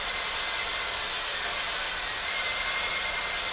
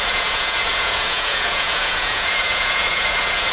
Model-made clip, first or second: second